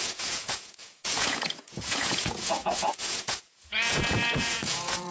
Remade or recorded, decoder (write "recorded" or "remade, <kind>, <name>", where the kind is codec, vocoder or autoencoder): remade, vocoder, Vocos